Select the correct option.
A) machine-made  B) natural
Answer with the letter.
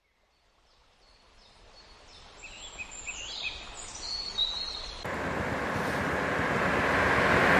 B